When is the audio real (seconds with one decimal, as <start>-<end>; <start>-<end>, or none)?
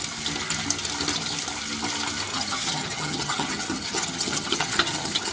0.0-2.3